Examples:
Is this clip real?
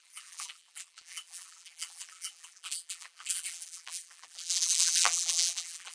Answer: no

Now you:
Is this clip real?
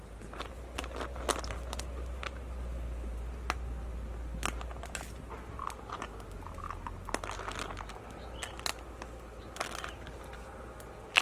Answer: yes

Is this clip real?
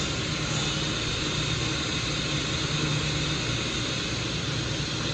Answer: yes